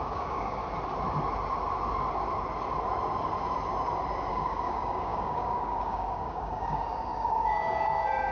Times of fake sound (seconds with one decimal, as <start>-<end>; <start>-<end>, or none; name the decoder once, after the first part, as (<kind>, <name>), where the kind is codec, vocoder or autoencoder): 0.0-0.6 (codec, DAC); 4.3-8.3